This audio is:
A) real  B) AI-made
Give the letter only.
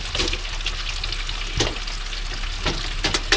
A